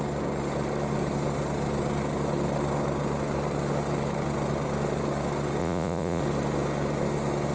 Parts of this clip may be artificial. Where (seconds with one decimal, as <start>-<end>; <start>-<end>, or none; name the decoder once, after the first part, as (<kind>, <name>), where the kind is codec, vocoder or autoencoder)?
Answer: 5.6-6.2 (vocoder, Vocos)